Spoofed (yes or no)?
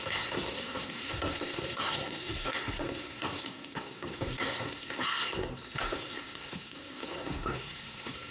yes